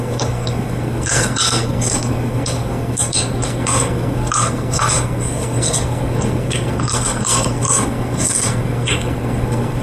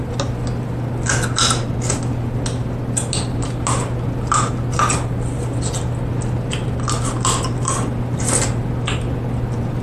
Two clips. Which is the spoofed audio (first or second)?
first